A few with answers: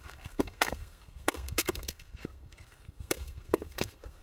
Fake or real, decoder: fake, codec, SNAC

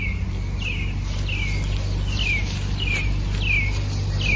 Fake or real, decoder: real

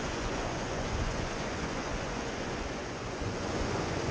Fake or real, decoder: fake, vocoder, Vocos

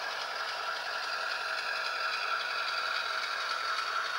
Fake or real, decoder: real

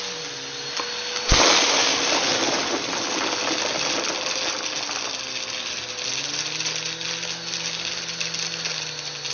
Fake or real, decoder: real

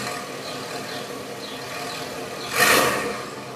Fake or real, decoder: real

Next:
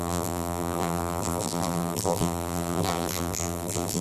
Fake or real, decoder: fake, vocoder, BigVGAN v2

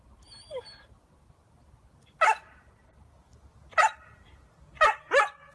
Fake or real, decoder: real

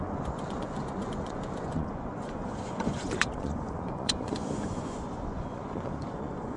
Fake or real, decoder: fake, vocoder, Vocos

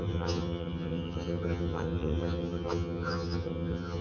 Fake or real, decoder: fake, vocoder, HiFi-GAN